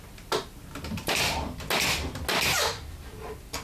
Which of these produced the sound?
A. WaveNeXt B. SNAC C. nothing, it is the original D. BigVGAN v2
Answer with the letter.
C